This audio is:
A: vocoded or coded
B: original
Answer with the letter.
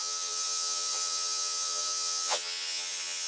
A